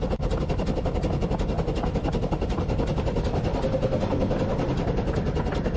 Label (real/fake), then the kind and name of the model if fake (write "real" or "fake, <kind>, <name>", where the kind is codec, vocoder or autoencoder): real